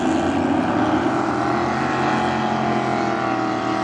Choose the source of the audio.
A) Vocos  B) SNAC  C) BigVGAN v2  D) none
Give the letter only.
D